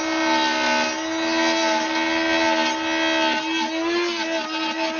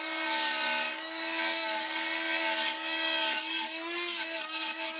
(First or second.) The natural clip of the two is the first